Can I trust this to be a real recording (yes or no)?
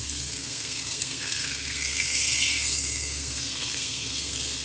no